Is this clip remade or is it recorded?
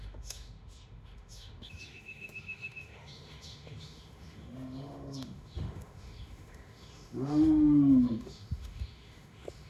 remade